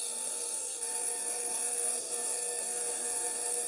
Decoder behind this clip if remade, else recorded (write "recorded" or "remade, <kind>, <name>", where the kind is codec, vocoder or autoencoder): remade, codec, SNAC